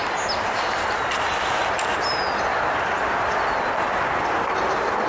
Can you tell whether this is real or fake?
real